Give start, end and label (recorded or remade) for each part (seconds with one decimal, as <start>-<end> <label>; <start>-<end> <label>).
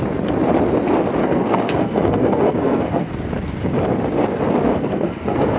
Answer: 0.0-1.2 recorded; 1.2-3.1 remade; 3.1-4.7 recorded; 4.7-5.6 remade